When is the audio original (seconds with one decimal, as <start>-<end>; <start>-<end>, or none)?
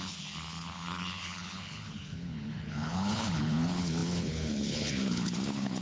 none